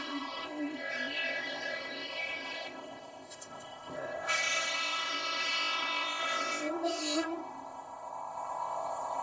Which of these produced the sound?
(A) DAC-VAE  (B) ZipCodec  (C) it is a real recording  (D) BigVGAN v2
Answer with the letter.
B